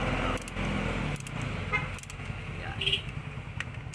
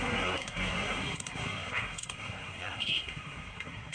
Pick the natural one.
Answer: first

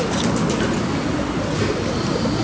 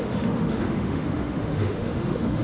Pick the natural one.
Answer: first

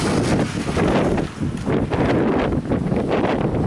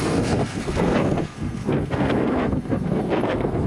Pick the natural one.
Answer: first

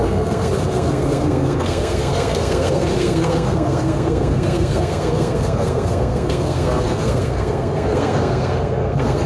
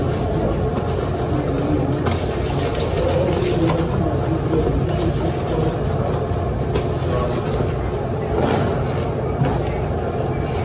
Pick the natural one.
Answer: second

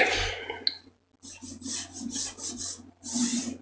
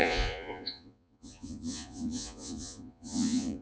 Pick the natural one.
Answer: first